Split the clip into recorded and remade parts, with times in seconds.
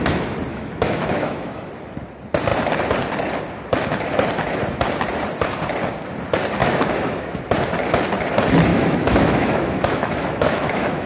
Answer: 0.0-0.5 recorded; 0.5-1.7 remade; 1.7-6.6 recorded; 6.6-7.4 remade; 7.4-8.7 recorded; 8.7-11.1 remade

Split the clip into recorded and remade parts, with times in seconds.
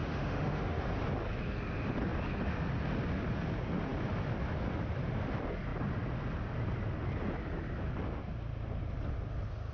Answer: 0.0-0.8 remade; 0.8-9.7 recorded